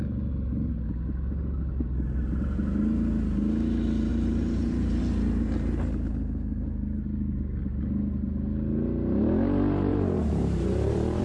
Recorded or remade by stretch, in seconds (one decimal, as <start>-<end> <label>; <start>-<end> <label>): 0.0-4.1 recorded; 4.1-5.0 remade; 5.0-9.9 recorded; 9.9-11.2 remade